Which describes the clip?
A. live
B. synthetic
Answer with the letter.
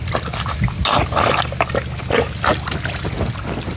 A